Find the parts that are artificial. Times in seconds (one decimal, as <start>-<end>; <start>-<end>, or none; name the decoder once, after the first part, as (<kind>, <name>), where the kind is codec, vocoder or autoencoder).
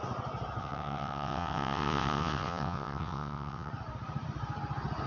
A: 0.6-3.7 (vocoder, WaveNeXt)